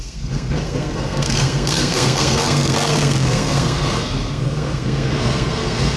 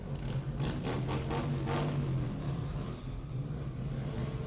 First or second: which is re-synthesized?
first